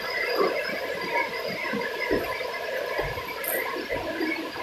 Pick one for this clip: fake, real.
real